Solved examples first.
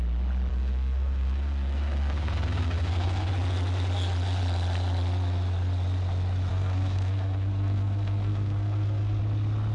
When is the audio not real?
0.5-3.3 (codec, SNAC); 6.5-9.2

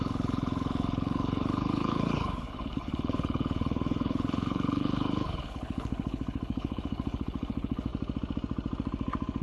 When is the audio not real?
0.0-7.9 (codec, HILCodec)

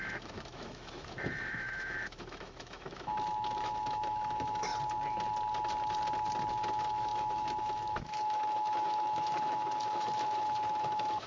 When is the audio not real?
0.0-4.7 (autoencoder, DAC-VAE); 6.5-11.3

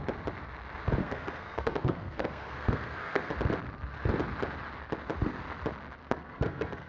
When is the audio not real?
1.0-3.3 (codec, SNAC); 6.0-6.9

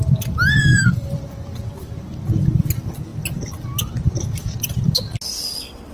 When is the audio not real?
0.5-1.1 (codec, SNAC)